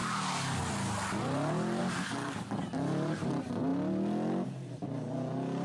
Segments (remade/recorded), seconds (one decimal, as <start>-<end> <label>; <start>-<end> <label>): 0.0-0.6 remade; 0.6-1.8 recorded; 1.8-2.5 remade; 2.5-5.6 recorded